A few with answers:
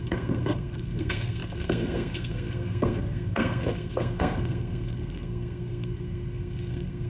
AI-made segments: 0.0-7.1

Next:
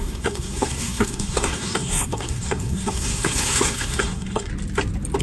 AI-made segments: 0.0-4.5

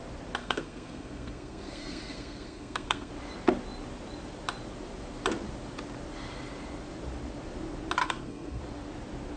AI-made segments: 0.4-3.1; 8.0-8.6

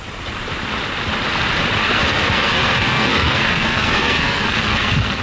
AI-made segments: 1.8-5.2

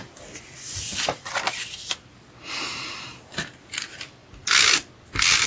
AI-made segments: none

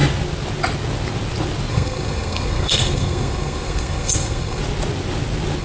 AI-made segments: 1.7-4.6

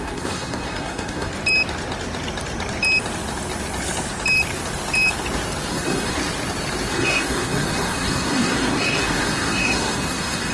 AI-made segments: 0.0-1.3; 5.7-6.2; 6.9-10.5